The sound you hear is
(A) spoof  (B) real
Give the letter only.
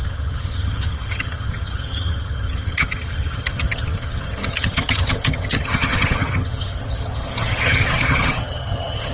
A